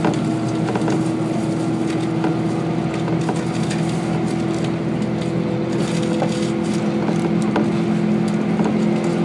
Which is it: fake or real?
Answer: real